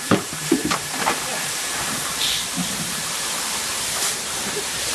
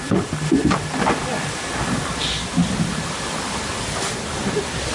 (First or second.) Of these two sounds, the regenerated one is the first